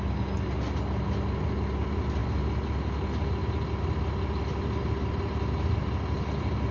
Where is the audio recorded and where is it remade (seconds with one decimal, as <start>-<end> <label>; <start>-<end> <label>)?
0.0-6.7 recorded